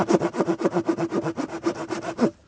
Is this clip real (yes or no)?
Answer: yes